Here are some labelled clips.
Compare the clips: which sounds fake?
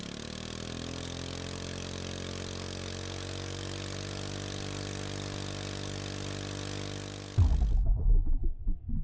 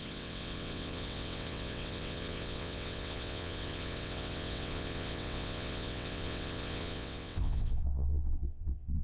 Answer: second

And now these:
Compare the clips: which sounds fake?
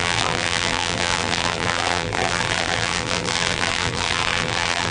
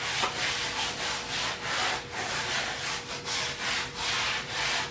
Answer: first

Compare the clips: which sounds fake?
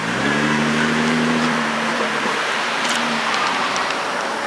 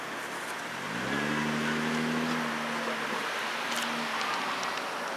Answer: first